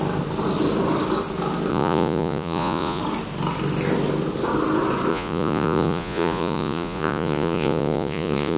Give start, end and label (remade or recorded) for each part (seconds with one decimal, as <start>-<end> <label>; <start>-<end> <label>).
0.0-1.7 recorded; 1.7-3.0 remade; 3.0-5.1 recorded; 5.1-8.6 remade